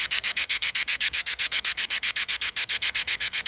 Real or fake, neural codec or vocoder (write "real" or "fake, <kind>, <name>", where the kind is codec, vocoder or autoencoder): fake, codec, SNAC